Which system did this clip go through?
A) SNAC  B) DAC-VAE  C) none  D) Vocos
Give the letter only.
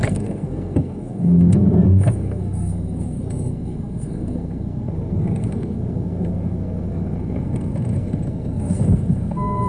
A